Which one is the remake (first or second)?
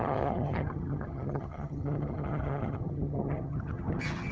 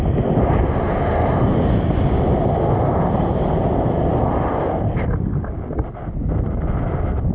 first